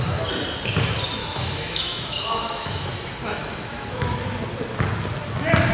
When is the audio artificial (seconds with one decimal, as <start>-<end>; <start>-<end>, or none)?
1.2-2.9; 3.4-4.2